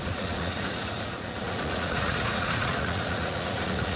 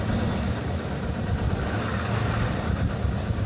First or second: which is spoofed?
first